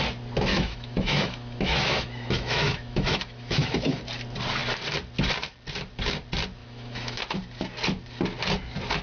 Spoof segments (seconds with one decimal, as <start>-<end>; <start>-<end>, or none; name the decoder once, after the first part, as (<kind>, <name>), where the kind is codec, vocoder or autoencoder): 0.5-4.0 (autoencoder, DAC-VAE); 6.6-7.2